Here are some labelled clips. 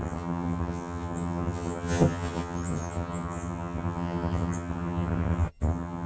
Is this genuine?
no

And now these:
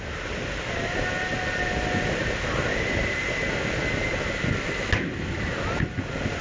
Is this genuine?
yes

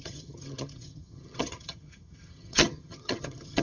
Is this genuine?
no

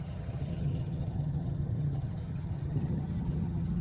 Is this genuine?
no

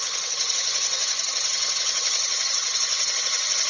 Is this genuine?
no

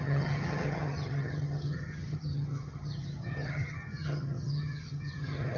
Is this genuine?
no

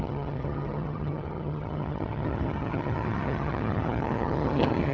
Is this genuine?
no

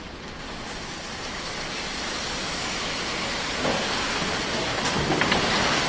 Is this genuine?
yes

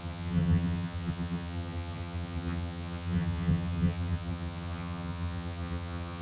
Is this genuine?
no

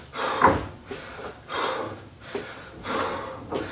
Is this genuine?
yes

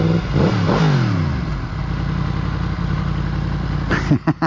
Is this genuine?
yes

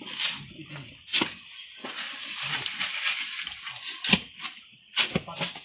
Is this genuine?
yes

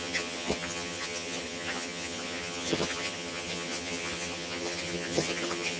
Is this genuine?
no